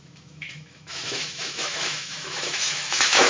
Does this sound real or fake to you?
fake